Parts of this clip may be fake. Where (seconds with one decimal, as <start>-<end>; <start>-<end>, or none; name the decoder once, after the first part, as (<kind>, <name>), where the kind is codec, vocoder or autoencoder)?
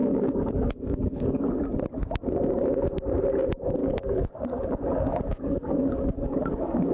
0.0-1.5 (codec, DAC); 3.8-6.9